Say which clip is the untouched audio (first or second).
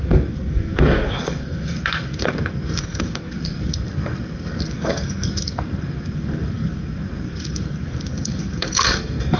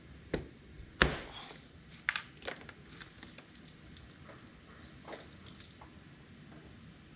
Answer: second